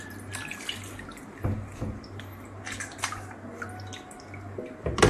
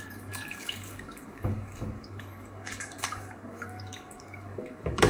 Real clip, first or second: first